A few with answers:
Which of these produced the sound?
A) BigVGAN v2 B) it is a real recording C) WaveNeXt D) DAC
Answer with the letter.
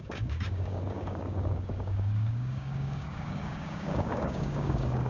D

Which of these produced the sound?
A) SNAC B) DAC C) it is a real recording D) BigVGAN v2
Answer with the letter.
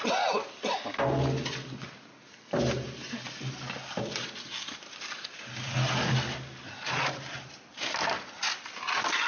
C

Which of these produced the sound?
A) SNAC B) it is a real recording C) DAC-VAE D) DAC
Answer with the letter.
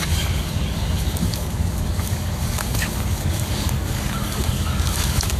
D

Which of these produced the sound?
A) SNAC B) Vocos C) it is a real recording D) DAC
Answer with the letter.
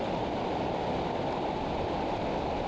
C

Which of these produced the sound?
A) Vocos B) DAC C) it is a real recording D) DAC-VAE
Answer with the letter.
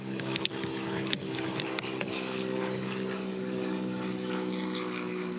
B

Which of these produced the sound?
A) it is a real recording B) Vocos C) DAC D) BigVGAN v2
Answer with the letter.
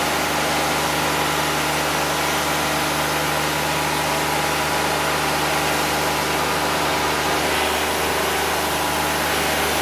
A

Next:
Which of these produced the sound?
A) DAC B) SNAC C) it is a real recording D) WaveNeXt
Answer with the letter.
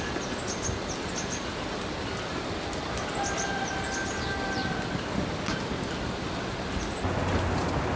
C